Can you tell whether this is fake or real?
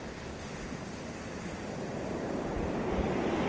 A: real